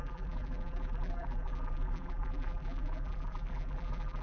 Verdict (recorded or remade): remade